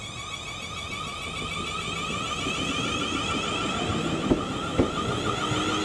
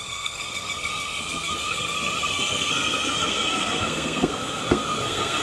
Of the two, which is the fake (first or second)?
second